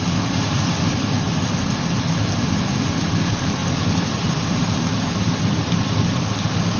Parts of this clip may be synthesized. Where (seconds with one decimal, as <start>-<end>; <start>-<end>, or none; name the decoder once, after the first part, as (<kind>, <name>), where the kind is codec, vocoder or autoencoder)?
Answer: none